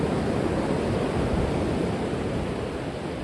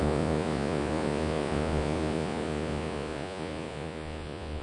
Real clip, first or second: first